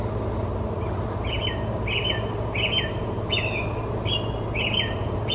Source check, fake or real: real